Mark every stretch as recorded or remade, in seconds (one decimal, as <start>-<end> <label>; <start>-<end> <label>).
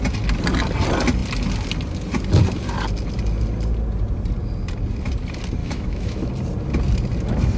0.0-5.6 recorded; 5.6-6.3 remade; 6.3-7.6 recorded